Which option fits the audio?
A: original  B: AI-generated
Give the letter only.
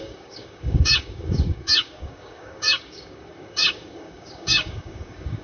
B